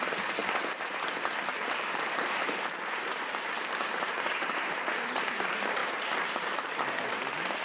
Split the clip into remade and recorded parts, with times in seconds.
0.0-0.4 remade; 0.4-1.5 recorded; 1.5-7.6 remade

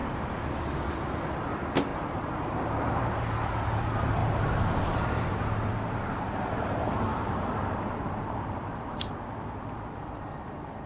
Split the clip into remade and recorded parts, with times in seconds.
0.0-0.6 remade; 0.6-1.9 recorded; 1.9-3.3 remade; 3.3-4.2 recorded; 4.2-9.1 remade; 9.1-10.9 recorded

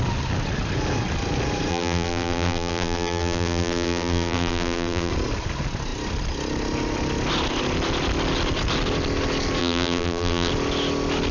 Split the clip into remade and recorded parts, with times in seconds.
0.0-1.7 recorded; 1.7-5.1 remade; 5.1-9.6 recorded; 9.6-10.5 remade; 10.5-11.3 recorded